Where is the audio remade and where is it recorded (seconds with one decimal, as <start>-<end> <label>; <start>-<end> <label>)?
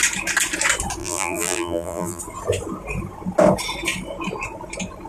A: 0.0-1.0 recorded; 1.0-2.2 remade; 2.2-5.1 recorded